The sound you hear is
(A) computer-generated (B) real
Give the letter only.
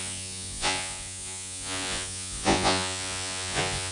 A